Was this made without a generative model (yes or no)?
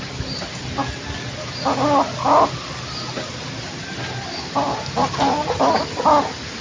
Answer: yes